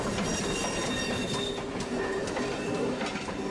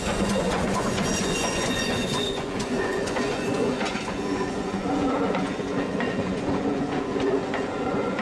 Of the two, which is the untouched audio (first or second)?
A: first